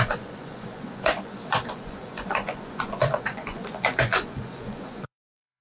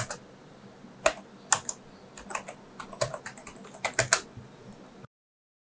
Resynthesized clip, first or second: first